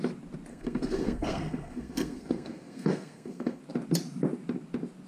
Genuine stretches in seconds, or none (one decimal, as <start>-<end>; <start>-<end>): 0.0-0.5; 3.6-5.1